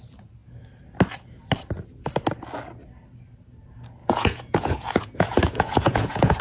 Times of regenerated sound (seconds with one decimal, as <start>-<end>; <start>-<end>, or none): 4.0-6.4

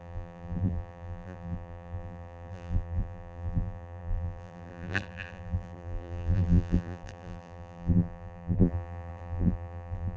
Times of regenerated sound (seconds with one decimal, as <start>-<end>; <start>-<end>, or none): 0.0-10.2